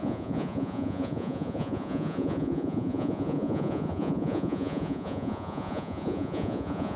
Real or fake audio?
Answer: fake